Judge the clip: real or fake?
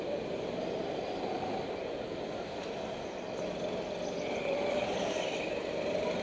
fake